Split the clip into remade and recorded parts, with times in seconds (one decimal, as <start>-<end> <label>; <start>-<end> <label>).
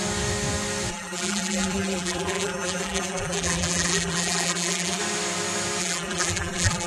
0.0-0.9 recorded; 0.9-5.0 remade; 5.0-5.8 recorded; 5.8-6.9 remade